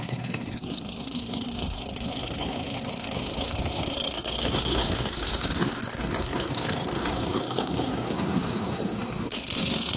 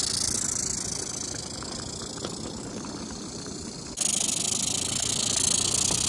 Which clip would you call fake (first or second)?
first